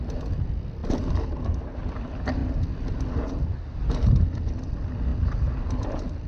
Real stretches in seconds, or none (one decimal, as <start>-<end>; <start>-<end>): 0.0-6.3